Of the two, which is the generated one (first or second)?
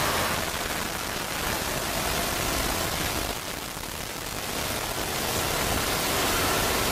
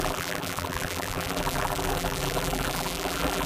second